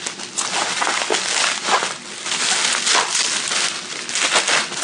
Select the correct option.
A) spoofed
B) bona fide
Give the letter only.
B